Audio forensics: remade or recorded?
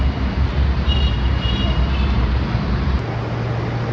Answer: recorded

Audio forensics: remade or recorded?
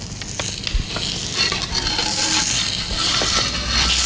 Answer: recorded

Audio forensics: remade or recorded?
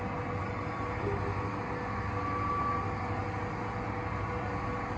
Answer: recorded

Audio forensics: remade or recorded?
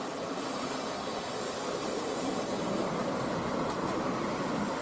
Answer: recorded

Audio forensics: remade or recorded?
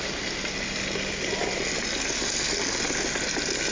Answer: recorded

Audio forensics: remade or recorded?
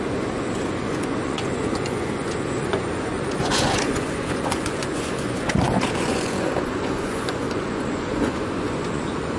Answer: remade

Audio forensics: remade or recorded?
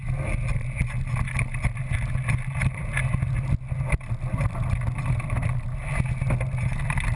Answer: recorded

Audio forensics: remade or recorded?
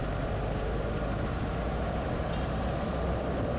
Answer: recorded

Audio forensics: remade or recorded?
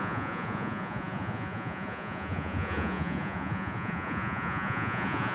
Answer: remade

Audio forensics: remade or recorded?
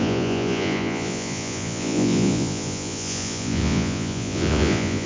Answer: remade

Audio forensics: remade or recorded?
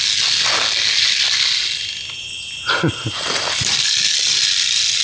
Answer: recorded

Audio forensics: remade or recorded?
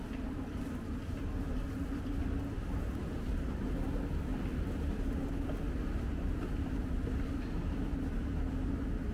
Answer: recorded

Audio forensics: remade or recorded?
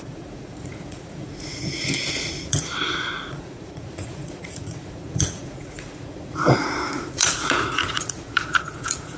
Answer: remade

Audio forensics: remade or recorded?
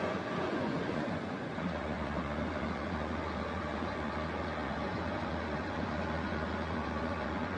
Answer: remade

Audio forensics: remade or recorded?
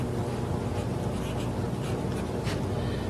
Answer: recorded